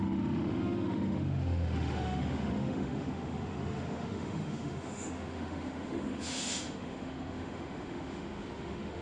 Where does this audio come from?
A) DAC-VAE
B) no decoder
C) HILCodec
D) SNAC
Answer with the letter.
A